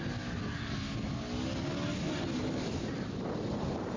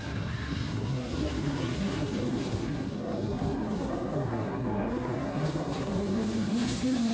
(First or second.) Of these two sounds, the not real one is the second